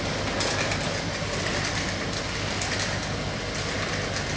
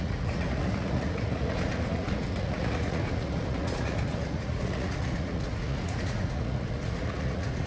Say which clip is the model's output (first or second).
second